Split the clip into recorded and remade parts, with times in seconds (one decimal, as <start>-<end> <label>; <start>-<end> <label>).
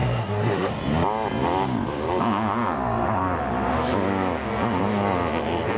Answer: 0.0-0.7 remade; 0.7-5.8 recorded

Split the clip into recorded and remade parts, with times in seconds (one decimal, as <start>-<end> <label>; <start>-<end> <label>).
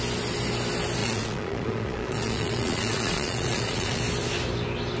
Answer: 0.0-1.0 recorded; 1.0-4.0 remade; 4.0-5.0 recorded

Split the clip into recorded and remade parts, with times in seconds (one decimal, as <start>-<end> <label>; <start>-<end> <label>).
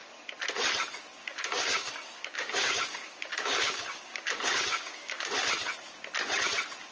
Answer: 0.0-1.2 recorded; 1.2-5.3 remade; 5.3-6.9 recorded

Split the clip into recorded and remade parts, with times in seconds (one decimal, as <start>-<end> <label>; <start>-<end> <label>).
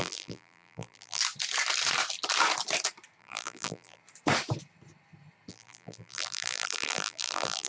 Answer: 0.0-1.2 remade; 1.2-3.2 recorded; 3.2-4.0 remade; 4.0-5.5 recorded; 5.5-7.7 remade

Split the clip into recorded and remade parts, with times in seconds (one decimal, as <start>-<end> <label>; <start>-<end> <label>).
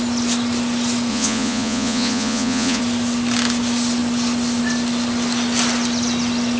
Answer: 0.0-1.1 recorded; 1.1-2.8 remade; 2.8-6.6 recorded